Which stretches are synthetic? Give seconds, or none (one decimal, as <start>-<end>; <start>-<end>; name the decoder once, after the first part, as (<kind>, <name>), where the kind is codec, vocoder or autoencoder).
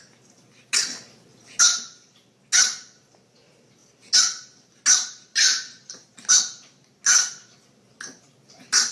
none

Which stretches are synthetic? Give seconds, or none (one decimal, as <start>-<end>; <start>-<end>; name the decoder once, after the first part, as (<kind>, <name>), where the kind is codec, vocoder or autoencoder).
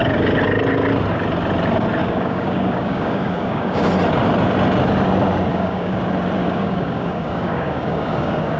2.0-3.9 (codec, DAC); 5.5-6.0; 6.4-8.6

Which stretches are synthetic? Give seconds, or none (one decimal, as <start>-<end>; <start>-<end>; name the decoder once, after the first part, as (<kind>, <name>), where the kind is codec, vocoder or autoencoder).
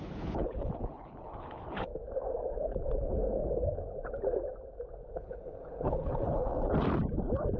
0.0-1.9 (codec, HILCodec); 5.2-6.5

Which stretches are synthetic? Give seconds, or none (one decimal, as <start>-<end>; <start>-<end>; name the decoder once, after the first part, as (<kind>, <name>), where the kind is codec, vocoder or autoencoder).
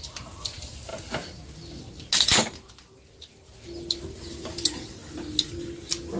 none